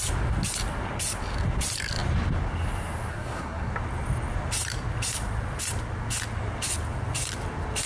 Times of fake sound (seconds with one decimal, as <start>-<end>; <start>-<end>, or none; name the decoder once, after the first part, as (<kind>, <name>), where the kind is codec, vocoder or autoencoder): 3.1-3.7 (codec, SNAC)